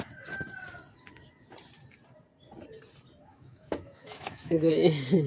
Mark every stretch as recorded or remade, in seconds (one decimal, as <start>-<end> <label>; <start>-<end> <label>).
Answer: 0.0-3.3 recorded; 3.3-4.7 remade; 4.7-5.3 recorded